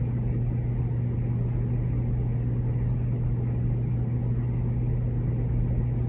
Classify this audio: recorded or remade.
recorded